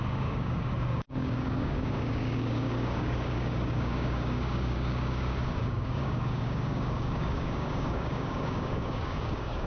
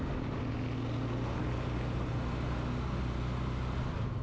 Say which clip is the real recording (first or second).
second